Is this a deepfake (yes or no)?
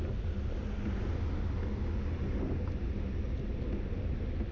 no